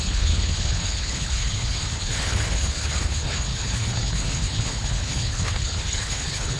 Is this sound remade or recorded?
remade